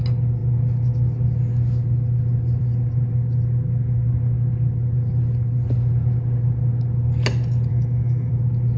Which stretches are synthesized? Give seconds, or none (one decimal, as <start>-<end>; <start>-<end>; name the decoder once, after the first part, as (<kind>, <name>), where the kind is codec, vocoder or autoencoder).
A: 7.7-8.3 (autoencoder, DAC-VAE)